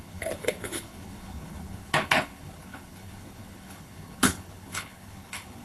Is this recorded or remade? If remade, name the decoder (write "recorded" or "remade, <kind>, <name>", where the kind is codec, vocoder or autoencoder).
remade, codec, HILCodec